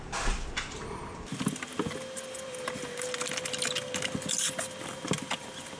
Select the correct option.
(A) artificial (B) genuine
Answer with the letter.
B